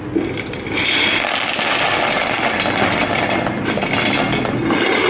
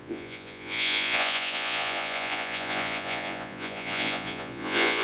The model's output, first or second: second